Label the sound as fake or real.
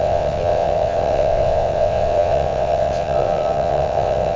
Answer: fake